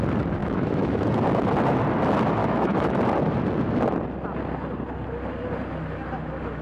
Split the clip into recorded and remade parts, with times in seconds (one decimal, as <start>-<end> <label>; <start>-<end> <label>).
0.0-0.4 recorded; 0.4-1.2 remade; 1.2-2.4 recorded; 2.4-3.0 remade; 3.0-6.6 recorded